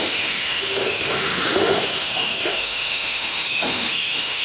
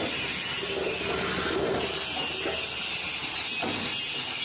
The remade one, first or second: first